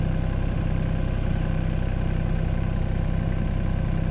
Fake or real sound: fake